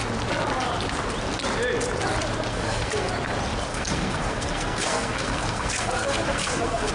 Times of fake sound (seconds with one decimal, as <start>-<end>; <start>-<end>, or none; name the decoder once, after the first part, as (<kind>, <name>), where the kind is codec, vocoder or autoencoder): 2.5-3.1 (codec, SNAC); 3.7-6.9

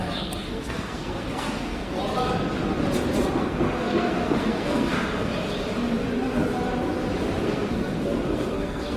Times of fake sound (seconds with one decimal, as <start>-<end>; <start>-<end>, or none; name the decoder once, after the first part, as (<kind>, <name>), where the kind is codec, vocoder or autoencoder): 0.0-2.0 (codec, SNAC); 3.4-5.3; 7.4-9.0

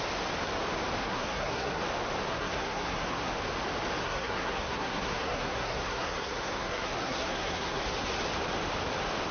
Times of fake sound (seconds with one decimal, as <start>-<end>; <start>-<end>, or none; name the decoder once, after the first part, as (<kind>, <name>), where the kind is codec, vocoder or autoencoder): 1.0-1.8 (codec, SNAC); 2.3-3.3; 4.0-7.8

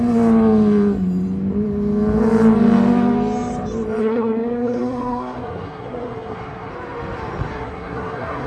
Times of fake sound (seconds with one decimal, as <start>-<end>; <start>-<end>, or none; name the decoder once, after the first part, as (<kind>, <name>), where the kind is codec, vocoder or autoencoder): 4.0-6.7 (codec, SNAC); 7.5-8.5

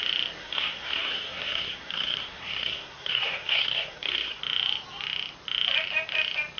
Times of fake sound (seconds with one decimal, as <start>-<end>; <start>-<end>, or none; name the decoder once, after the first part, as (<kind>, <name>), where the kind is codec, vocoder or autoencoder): 0.4-4.4 (codec, SNAC)

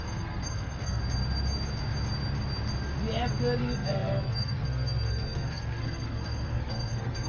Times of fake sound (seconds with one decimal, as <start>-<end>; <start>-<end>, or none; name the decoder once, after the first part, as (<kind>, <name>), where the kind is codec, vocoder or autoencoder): 0.0-1.0 (codec, SNAC); 3.6-7.3

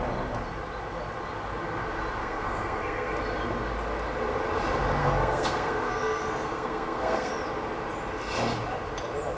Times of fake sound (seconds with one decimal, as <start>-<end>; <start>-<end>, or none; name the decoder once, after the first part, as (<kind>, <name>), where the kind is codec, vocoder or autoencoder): 2.2-3.1 (codec, SNAC); 5.0-7.3

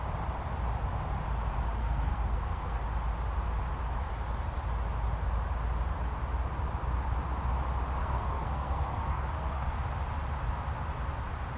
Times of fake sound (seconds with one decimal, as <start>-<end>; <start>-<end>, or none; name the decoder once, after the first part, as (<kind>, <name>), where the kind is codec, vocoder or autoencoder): 1.8-2.8 (codec, SNAC); 8.0-9.7